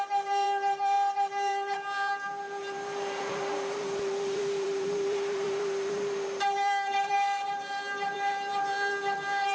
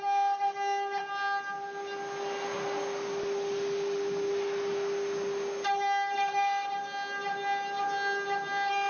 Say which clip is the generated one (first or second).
first